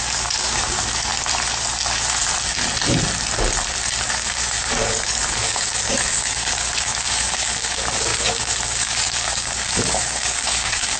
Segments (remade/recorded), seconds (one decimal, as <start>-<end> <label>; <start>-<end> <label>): 0.0-1.1 remade; 1.1-4.1 recorded; 4.1-11.0 remade